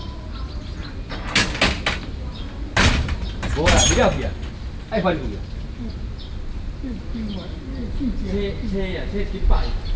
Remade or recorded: recorded